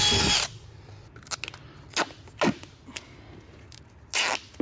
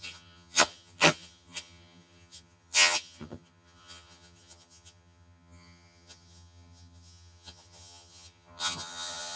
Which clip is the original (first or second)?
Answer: first